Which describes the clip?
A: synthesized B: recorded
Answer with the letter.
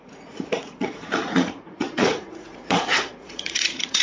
A